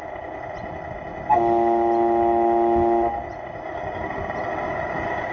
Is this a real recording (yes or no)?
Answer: yes